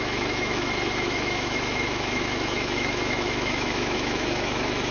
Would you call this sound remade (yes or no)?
yes